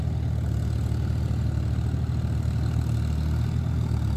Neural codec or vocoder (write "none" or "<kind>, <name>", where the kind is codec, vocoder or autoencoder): none